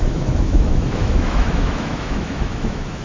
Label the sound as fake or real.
fake